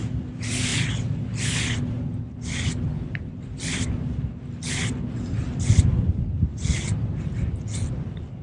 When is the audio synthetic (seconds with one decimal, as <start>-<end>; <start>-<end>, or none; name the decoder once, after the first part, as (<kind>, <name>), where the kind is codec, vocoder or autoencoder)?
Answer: none